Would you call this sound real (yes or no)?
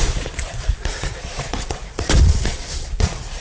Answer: no